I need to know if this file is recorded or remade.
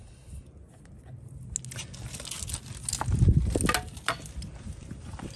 recorded